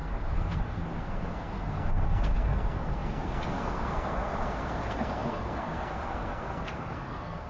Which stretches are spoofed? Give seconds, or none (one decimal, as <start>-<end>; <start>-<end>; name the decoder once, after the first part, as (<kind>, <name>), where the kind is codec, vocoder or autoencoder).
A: 0.0-7.5 (codec, SNAC)